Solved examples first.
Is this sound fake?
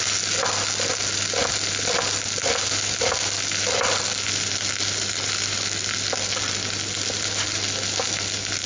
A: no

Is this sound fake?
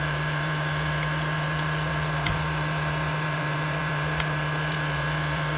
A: yes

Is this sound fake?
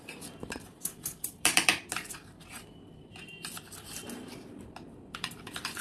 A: yes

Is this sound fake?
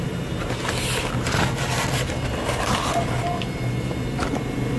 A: no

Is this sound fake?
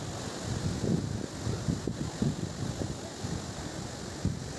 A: no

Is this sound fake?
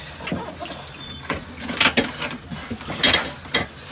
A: no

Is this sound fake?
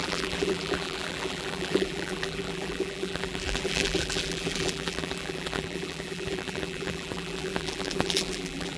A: yes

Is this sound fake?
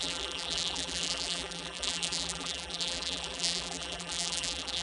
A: yes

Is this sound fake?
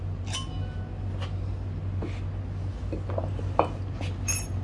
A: no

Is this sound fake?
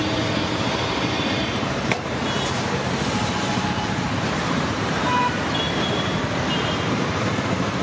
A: yes